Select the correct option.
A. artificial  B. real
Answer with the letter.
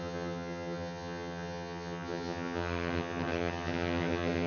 A